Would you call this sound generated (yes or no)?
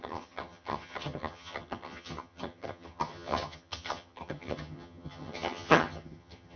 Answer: yes